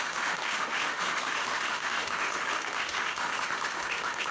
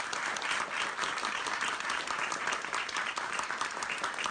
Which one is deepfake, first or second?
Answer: first